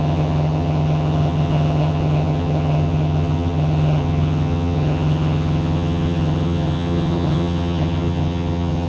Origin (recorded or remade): remade